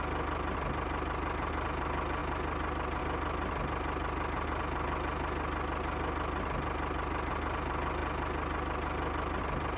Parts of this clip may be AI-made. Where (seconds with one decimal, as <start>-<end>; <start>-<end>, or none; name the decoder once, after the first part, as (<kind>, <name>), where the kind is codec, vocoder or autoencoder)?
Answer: none